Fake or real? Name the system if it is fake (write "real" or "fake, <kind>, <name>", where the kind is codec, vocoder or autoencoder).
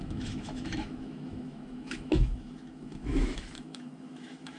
fake, autoencoder, DAC-VAE